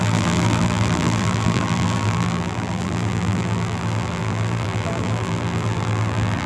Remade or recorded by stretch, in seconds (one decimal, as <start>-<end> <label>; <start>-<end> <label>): 0.0-6.5 remade